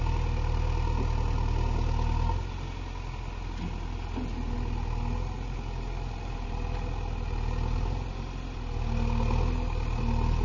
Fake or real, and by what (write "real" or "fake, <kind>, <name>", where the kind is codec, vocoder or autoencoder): real